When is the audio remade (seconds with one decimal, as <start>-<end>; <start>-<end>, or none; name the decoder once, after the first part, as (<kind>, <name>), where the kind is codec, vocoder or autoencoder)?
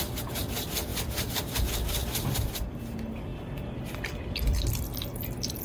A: none